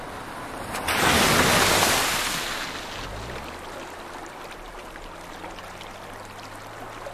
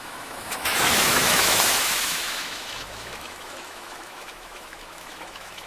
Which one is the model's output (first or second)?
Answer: second